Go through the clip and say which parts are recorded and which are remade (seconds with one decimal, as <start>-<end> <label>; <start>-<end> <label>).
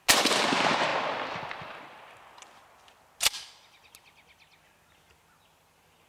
0.0-6.1 recorded